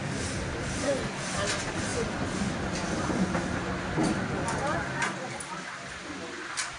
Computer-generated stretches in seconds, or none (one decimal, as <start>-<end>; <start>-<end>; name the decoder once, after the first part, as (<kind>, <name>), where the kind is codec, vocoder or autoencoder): none